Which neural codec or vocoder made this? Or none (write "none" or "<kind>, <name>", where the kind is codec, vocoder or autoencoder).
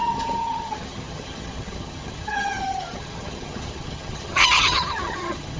vocoder, HiFi-GAN